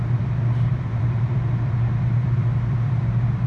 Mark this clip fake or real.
fake